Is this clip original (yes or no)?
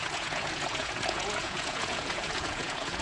no